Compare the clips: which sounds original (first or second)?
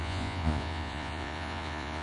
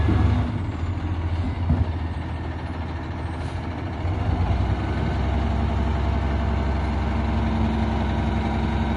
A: second